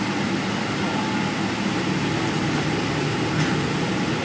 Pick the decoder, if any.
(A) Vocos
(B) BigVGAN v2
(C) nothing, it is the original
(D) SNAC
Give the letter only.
C